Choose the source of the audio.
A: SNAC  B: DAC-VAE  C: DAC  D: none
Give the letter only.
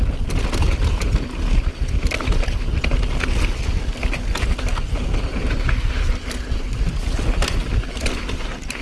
D